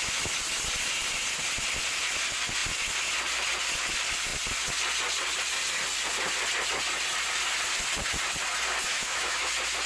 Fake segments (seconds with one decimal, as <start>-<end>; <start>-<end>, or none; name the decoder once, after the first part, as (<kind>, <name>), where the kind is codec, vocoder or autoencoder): 8.9-9.5 (autoencoder, DAC-VAE)